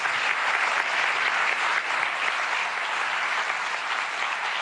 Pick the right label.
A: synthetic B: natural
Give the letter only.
B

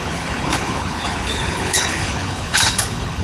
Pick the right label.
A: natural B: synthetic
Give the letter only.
B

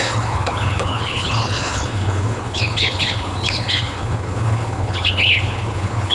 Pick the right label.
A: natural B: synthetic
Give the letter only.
B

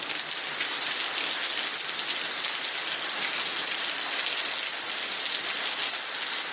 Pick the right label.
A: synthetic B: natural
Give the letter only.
B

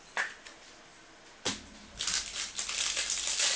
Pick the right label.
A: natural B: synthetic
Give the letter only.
A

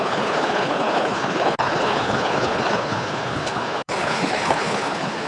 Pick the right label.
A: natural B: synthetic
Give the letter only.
B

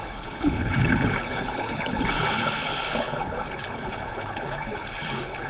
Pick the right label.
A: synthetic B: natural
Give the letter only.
A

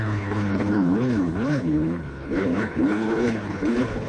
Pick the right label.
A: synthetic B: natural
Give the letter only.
A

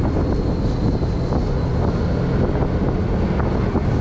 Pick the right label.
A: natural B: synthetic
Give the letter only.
A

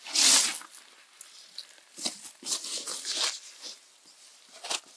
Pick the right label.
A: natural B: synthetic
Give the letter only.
A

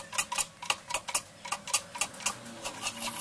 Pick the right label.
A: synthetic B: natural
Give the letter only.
B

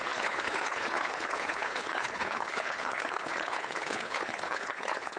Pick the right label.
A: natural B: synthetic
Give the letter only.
B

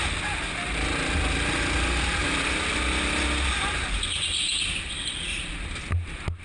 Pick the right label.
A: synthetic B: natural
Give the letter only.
B